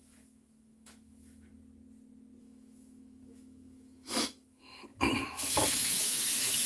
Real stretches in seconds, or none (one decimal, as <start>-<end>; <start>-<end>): 1.5-2.4